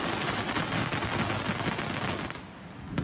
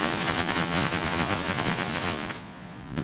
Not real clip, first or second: second